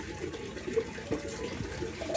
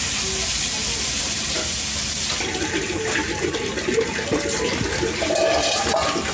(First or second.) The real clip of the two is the first